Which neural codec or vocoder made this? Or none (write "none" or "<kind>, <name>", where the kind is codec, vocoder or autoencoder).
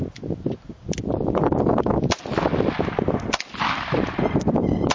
none